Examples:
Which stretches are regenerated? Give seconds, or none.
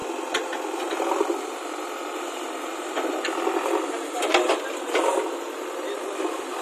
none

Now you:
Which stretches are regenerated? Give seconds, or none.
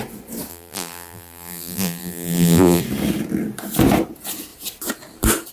0.5-2.8 (vocoder, BigVGAN v2)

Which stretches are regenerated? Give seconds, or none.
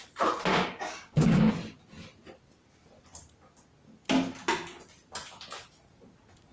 0.5-1.5 (codec, DAC)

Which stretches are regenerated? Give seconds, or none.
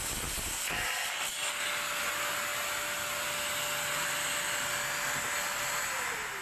none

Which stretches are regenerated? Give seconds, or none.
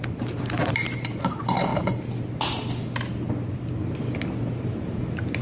0.0-1.7 (vocoder, BigVGAN v2); 4.4-5.4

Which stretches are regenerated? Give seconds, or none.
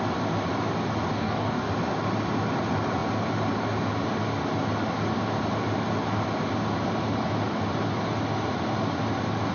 1.1-1.7 (codec, DAC)